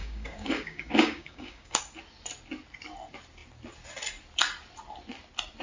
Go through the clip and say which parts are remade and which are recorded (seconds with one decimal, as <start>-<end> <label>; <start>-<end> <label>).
0.0-1.8 remade; 1.8-5.6 recorded

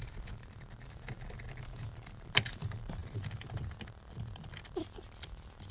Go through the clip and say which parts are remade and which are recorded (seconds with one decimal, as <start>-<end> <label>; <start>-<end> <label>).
0.0-5.7 recorded

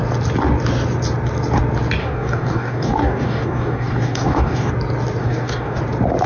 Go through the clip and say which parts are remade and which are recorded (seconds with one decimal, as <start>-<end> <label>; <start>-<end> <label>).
0.0-2.0 recorded; 2.0-4.7 remade; 4.7-5.2 recorded; 5.2-5.8 remade; 5.8-6.3 recorded

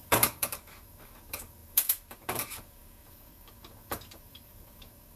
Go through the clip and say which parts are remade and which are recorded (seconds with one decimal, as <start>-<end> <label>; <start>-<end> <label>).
0.0-5.2 remade